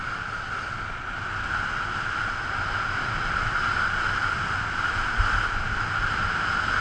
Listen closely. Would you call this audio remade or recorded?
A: recorded